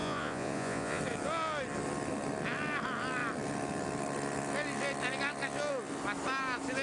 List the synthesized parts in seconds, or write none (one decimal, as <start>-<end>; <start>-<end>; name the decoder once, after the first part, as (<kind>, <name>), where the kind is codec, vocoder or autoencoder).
0.0-1.0 (vocoder, Vocos)